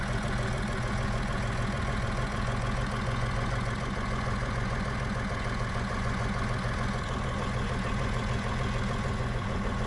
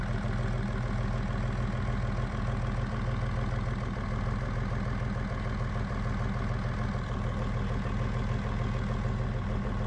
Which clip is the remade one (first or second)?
first